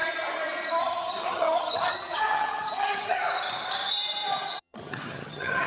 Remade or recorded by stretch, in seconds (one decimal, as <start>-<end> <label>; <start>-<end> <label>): 0.0-0.8 recorded; 0.8-3.2 remade; 3.2-4.6 recorded; 4.6-5.7 remade